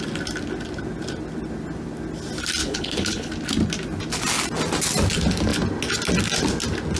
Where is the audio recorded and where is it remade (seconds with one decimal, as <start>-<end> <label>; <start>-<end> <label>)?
0.0-2.6 recorded; 2.6-3.3 remade; 3.3-7.0 recorded